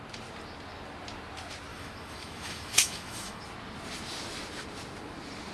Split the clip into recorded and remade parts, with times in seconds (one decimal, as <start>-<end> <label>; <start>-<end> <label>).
0.0-1.7 recorded; 1.7-3.4 remade; 3.4-5.5 recorded